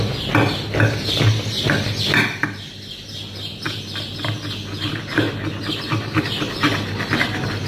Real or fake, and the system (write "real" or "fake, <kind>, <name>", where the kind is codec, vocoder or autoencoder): real